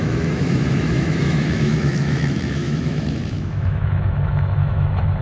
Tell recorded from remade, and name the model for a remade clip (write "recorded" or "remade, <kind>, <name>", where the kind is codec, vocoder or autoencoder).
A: remade, autoencoder, DAC-VAE